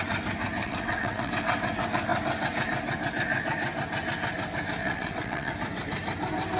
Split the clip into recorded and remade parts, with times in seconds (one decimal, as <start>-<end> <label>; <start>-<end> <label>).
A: 0.0-0.6 recorded; 0.6-1.3 remade; 1.3-4.8 recorded; 4.8-5.5 remade; 5.5-6.6 recorded